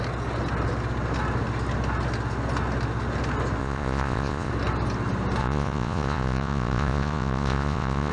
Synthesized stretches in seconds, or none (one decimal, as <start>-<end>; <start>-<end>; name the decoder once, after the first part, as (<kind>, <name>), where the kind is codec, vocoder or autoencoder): 3.6-4.5 (vocoder, Vocos); 5.4-8.1